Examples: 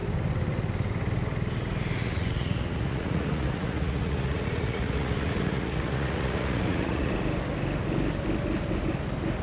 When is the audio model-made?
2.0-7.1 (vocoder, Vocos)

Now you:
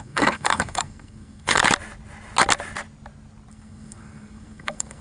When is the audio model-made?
0.0-1.6 (codec, SNAC); 3.5-5.0

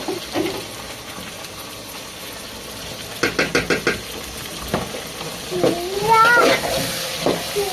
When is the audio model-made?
none